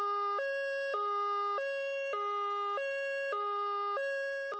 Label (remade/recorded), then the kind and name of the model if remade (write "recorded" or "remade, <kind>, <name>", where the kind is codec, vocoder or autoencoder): recorded